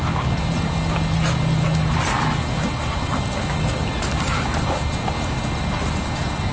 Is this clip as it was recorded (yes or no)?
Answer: yes